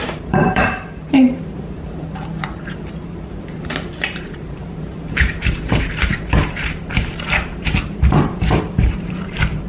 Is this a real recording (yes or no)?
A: no